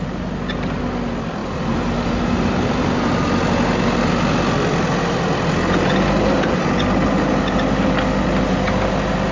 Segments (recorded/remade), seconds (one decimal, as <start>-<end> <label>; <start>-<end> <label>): 0.0-1.4 recorded; 1.4-2.1 remade; 2.1-9.3 recorded